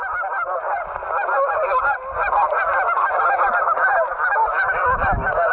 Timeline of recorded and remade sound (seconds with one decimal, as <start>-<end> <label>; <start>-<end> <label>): 0.0-5.5 recorded